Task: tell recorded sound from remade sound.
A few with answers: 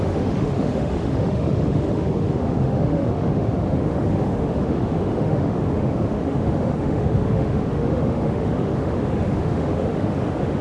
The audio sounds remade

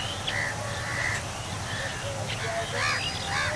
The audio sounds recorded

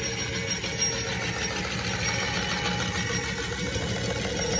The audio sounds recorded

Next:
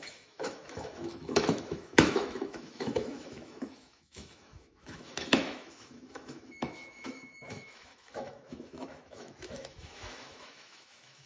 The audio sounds remade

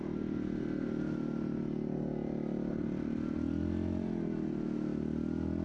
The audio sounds recorded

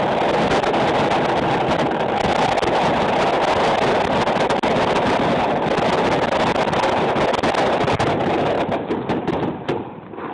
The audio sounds recorded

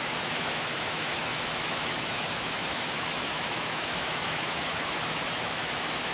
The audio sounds remade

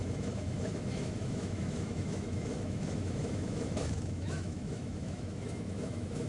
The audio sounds remade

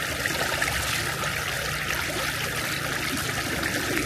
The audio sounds recorded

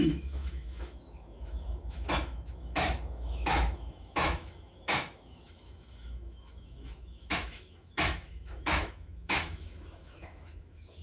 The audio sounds remade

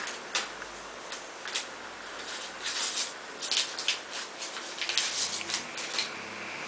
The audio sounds recorded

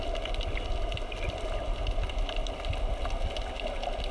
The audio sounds recorded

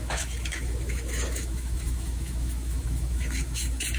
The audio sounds remade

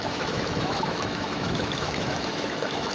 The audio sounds remade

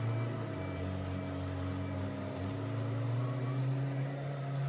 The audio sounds recorded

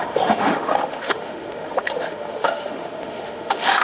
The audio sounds remade